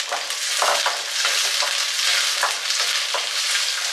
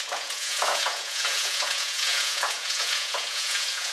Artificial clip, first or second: second